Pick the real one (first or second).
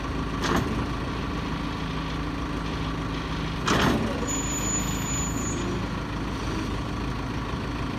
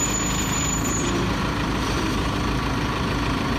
first